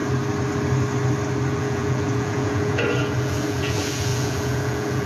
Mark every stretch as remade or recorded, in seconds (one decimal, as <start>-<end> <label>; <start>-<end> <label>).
0.0-1.6 recorded; 1.6-5.1 remade